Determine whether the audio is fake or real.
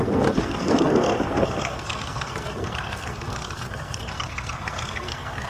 fake